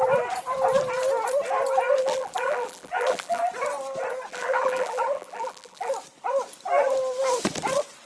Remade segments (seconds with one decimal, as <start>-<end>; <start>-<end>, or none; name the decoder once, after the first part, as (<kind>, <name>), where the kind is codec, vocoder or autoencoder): 2.0-3.4 (vocoder, BigVGAN v2); 4.3-5.9